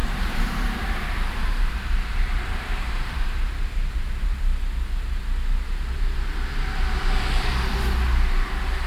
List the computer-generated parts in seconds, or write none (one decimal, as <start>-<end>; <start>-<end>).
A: 0.0-4.4